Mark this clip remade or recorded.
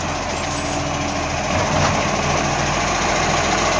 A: recorded